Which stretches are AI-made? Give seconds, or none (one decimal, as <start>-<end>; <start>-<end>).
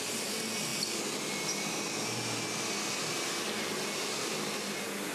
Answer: none